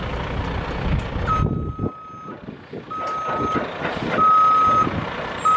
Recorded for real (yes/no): yes